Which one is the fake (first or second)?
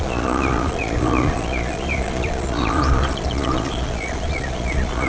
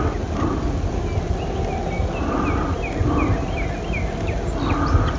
first